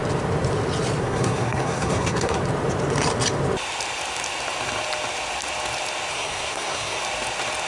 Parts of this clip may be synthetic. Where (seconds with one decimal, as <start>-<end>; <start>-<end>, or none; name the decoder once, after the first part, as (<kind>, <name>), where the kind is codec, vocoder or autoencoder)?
1.0-2.4 (codec, SNAC); 6.1-7.0